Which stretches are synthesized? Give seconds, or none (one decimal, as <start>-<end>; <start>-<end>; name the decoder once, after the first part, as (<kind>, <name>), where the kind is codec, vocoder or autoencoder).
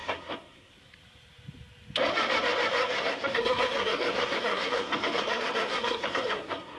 0.0-0.7 (codec, SNAC); 2.8-6.8